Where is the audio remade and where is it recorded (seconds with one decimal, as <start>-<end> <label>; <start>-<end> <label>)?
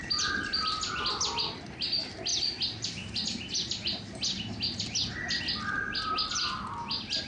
0.0-7.3 recorded